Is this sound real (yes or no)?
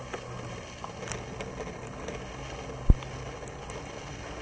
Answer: yes